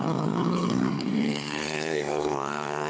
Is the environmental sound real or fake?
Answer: fake